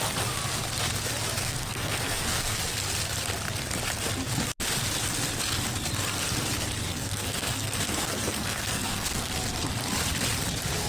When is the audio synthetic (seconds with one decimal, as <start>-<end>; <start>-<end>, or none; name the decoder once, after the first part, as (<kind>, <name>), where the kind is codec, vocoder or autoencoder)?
1.4-2.6 (codec, SNAC); 6.9-9.3